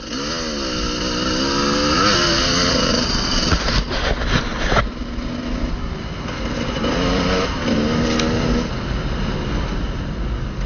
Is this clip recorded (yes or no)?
yes